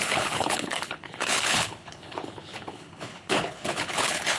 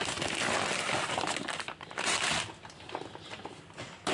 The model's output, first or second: first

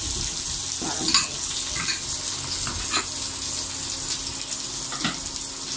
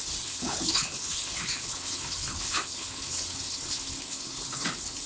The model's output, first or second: second